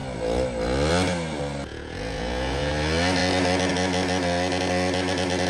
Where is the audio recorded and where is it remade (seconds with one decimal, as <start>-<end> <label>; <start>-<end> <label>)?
0.0-1.7 recorded; 1.7-2.7 remade; 2.7-5.5 recorded